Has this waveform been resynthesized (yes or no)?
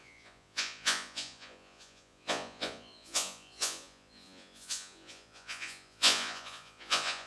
yes